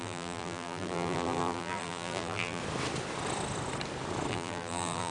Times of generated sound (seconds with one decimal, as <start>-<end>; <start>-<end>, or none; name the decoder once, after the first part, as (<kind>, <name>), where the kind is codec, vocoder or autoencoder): 0.0-2.6 (vocoder, BigVGAN v2); 4.3-5.1